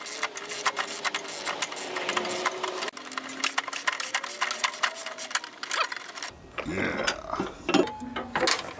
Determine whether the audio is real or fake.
real